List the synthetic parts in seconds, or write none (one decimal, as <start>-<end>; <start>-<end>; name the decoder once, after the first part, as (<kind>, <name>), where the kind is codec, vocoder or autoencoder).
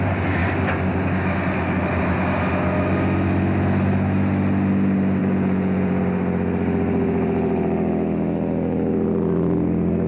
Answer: 5.2-6.0 (vocoder, Vocos)